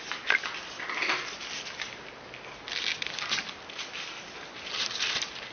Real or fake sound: real